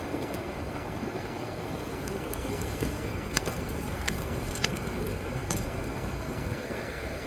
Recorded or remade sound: remade